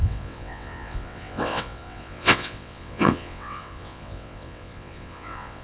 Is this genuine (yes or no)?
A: no